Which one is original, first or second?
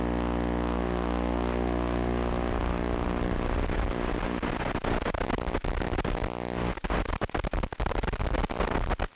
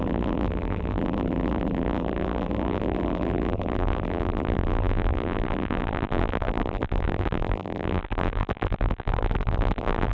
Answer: first